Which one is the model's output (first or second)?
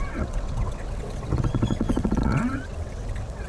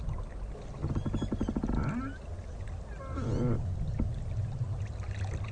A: first